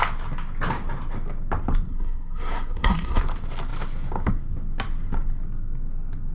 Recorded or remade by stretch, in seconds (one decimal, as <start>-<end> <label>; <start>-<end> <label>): 0.0-1.9 recorded; 1.9-3.2 remade; 3.2-6.3 recorded